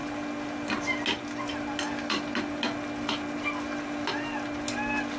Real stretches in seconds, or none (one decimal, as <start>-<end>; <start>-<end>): 0.0-5.2

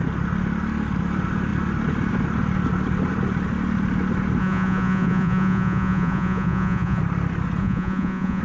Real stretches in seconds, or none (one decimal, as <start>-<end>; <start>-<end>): 0.0-4.4; 7.0-7.6

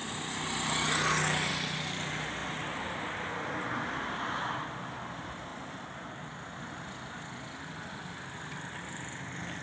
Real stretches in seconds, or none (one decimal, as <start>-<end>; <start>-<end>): 0.0-9.6